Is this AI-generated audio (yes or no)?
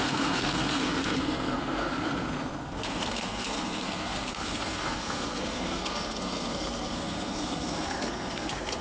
yes